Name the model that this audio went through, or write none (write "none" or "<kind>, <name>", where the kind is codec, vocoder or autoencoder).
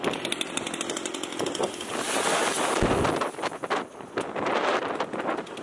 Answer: none